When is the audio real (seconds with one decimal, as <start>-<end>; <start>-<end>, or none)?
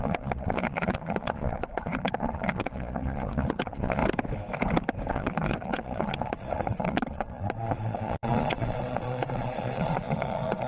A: 4.0-5.1